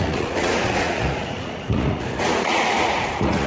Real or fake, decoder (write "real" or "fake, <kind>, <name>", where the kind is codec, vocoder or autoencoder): fake, vocoder, Vocos